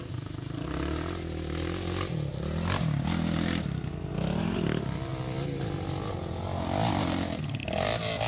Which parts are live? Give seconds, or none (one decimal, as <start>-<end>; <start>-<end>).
0.0-8.3